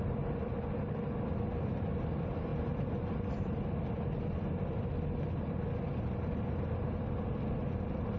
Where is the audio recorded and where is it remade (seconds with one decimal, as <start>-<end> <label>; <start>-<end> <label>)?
0.0-8.2 recorded